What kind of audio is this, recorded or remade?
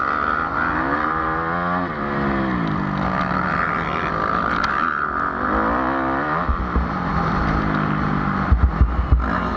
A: recorded